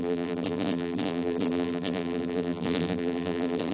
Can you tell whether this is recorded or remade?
remade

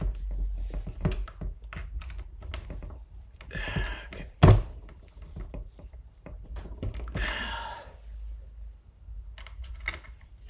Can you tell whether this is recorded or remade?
recorded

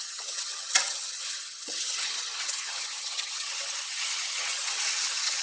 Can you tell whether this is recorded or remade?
remade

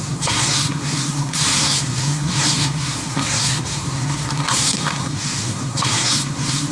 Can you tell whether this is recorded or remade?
remade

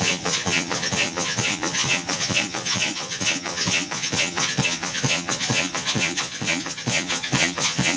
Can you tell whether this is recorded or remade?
remade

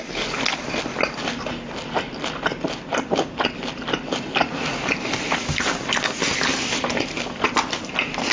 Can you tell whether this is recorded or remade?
recorded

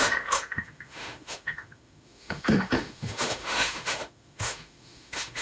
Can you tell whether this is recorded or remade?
remade